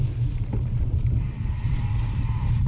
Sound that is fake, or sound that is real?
real